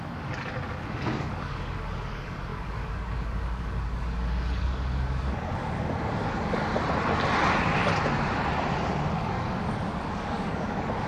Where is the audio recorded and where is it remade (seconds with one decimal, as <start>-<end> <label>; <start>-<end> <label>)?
0.0-6.7 remade; 6.7-9.1 recorded; 9.1-11.1 remade